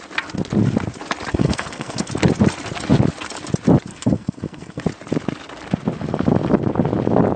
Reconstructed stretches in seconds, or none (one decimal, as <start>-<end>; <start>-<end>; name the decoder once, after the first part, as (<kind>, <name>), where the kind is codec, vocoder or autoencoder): 1.3-2.1 (codec, SNAC); 3.9-4.8